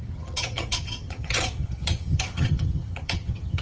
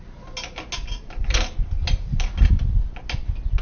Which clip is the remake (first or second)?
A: first